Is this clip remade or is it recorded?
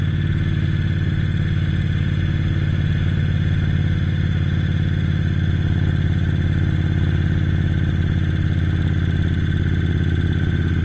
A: recorded